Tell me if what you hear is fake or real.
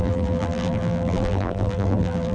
fake